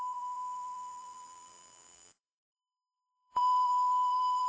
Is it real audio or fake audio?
fake